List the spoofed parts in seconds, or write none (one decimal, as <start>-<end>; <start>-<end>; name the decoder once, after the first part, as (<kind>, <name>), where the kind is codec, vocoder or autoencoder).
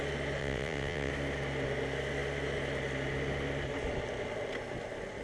0.4-1.1 (vocoder, WaveNeXt)